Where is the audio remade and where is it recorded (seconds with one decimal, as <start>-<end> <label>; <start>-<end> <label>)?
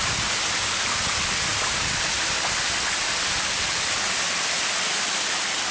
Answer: 0.0-5.7 recorded